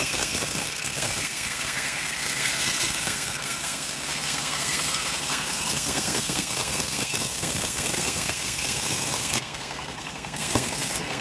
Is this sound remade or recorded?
remade